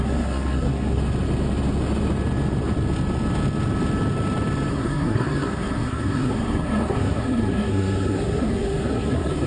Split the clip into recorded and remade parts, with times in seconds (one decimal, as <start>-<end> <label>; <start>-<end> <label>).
0.0-1.0 remade; 1.0-4.7 recorded; 4.7-9.5 remade